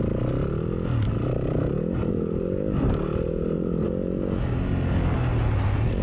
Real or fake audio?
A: real